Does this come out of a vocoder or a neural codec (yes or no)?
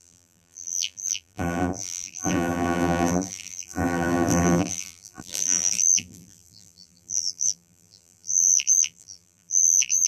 yes